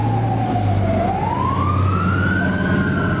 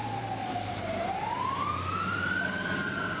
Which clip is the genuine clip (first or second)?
first